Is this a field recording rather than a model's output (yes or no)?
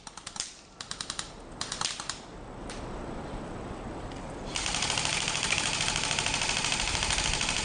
yes